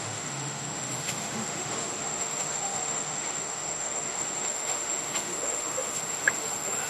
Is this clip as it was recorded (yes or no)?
no